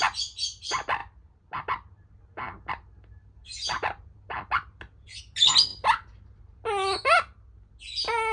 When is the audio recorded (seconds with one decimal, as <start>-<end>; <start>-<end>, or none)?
0.0-8.3